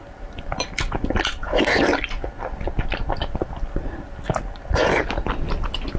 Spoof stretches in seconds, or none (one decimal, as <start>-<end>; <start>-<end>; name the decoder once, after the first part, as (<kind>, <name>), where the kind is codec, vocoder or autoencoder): 2.9-3.5 (vocoder, BigVGAN v2)